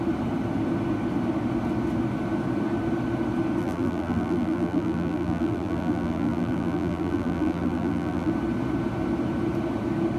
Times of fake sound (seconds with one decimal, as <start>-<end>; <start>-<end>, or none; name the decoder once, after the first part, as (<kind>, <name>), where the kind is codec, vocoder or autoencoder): 3.6-8.3 (vocoder, BigVGAN v2)